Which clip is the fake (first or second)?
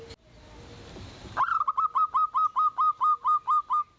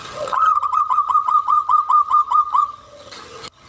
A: second